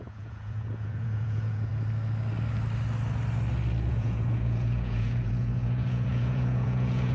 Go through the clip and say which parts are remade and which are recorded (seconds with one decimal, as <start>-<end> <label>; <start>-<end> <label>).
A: 0.0-1.7 remade; 1.7-3.9 recorded; 3.9-7.1 remade